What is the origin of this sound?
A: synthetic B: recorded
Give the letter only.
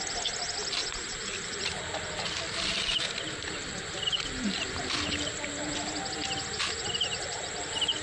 B